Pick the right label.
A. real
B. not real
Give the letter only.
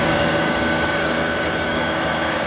B